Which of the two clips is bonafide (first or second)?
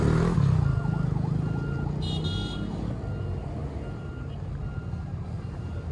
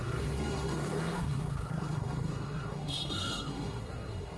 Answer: first